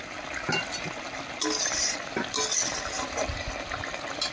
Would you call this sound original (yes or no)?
yes